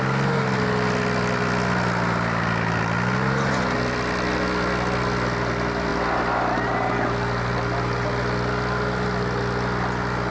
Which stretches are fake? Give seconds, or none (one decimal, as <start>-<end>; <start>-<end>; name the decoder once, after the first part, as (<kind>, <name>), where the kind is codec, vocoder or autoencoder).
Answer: none